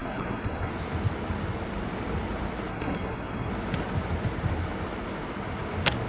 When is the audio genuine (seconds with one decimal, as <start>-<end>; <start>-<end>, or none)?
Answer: 0.7-2.7; 3.5-6.1